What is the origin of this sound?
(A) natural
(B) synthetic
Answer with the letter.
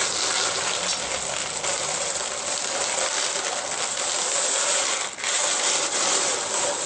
A